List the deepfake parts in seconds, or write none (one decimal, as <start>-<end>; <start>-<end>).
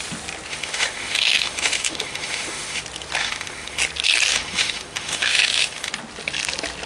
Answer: 0.5-2.8; 3.2-3.8; 4.3-5.9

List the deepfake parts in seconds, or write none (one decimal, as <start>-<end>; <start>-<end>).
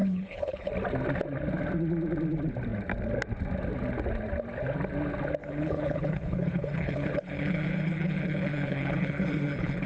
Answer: 0.0-0.7; 5.4-9.9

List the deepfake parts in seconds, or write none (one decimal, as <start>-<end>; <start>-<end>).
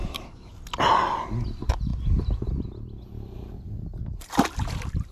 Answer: 0.0-0.5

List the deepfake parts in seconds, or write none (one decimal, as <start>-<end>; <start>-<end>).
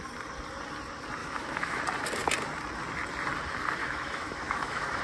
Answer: 1.2-1.8; 3.8-5.0